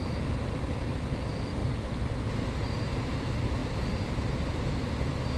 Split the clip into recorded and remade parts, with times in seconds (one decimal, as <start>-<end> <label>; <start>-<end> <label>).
0.0-5.4 recorded